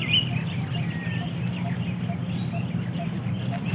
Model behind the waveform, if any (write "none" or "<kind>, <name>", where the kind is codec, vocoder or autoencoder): none